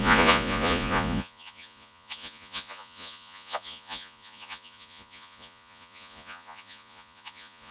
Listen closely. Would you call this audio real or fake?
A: fake